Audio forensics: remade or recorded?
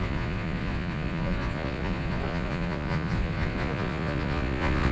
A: remade